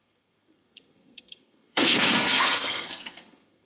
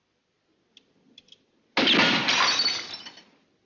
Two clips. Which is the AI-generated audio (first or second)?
first